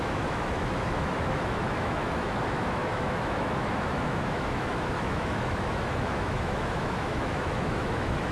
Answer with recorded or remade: remade